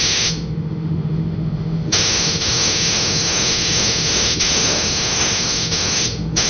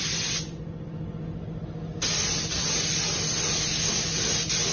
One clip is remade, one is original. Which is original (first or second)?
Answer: second